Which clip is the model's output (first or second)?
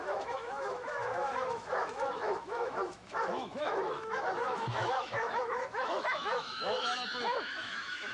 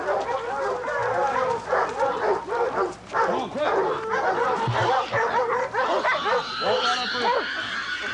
first